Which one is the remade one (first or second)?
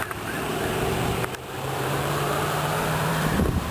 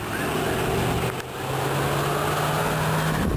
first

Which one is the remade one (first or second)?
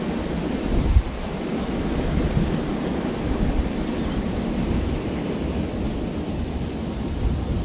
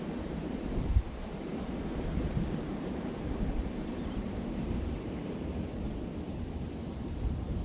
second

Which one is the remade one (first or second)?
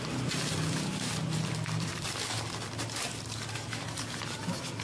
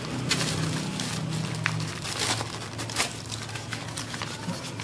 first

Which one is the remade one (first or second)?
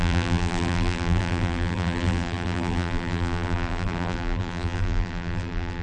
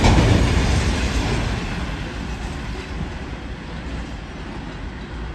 first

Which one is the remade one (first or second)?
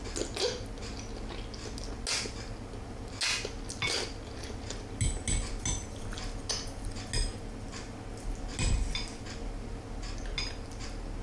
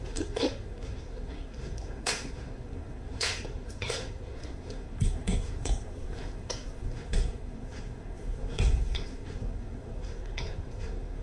second